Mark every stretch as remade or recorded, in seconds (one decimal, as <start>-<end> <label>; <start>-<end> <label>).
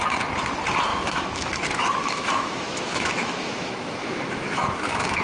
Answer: 0.0-0.9 recorded; 0.9-1.6 remade; 1.6-2.0 recorded; 2.0-5.2 remade